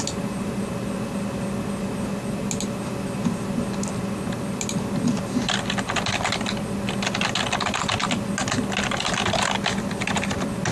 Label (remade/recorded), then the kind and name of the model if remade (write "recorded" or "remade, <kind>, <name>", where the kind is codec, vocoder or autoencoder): recorded